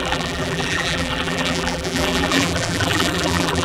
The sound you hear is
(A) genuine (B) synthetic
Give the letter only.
B